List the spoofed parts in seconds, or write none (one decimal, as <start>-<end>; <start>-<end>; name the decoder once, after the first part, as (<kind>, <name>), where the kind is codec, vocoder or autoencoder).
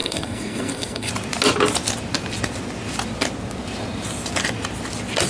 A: 0.0-1.1 (codec, SNAC)